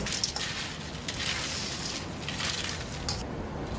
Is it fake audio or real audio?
real